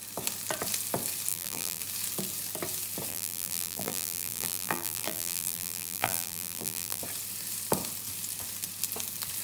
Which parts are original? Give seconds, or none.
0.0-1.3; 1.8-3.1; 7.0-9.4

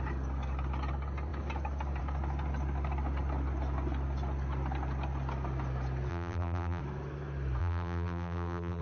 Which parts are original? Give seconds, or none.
0.0-6.1; 6.8-7.6

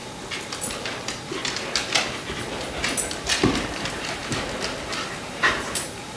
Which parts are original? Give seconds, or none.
0.0-3.7; 4.2-5.3

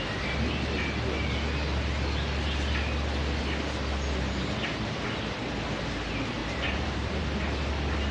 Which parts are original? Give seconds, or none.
0.0-6.4; 7.2-8.1

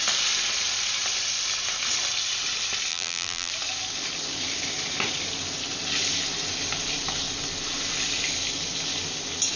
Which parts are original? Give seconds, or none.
0.0-2.9; 3.5-9.6

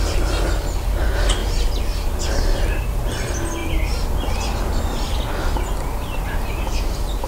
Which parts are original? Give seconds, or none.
0.0-7.3